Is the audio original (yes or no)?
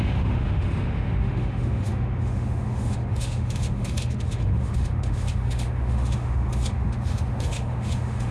no